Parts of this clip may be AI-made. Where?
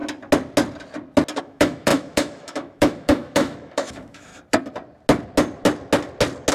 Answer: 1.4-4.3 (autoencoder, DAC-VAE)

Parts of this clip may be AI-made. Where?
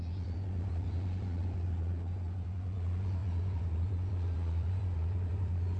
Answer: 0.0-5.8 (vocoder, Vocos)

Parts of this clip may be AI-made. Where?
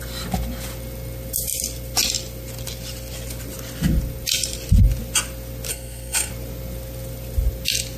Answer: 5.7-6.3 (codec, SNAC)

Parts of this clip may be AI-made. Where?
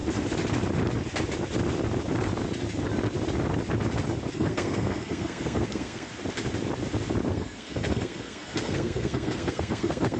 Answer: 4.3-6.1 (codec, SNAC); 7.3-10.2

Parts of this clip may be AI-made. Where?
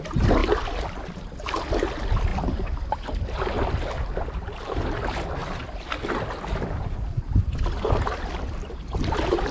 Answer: none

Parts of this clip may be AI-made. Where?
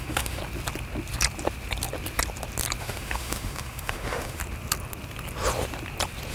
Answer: 0.0-0.4 (autoencoder, DAC-VAE); 2.8-4.4